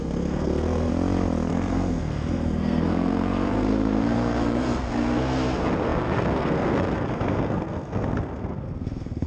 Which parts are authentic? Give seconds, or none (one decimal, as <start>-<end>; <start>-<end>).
0.9-1.5